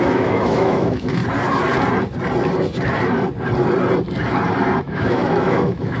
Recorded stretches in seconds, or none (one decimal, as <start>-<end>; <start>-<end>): 1.2-4.8